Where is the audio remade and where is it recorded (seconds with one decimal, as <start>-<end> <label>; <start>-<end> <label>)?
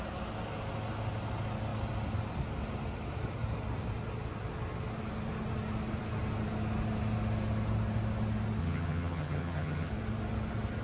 0.0-8.6 recorded; 8.6-9.9 remade; 9.9-10.8 recorded